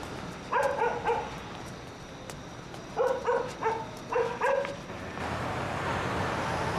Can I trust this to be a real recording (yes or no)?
yes